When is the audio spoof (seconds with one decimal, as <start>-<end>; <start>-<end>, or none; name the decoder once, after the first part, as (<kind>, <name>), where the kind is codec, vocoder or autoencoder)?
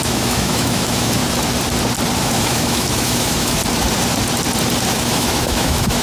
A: 0.0-1.2 (autoencoder, DAC-VAE); 2.2-3.6; 4.9-6.0